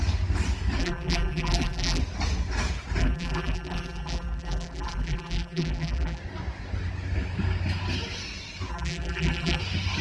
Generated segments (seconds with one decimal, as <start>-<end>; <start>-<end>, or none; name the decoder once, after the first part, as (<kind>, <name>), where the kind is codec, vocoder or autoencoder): 0.8-2.0 (vocoder, BigVGAN v2); 3.0-6.2; 8.7-9.6